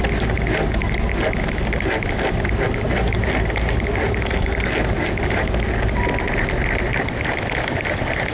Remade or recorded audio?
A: recorded